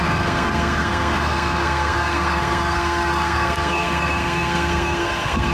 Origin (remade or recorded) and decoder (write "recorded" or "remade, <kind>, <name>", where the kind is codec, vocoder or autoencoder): remade, codec, SNAC